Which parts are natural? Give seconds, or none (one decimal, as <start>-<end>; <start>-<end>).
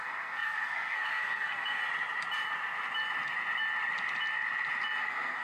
1.8-5.0